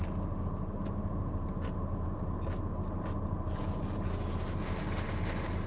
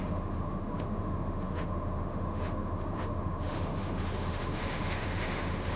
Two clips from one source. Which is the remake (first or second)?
second